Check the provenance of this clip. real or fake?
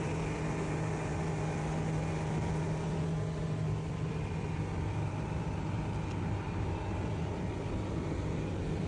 real